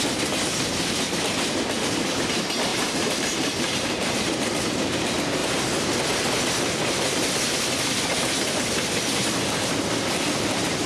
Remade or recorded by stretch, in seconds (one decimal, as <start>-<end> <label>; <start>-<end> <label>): 0.0-2.7 recorded; 2.7-4.8 remade; 4.8-5.4 recorded; 5.4-6.1 remade; 6.1-10.9 recorded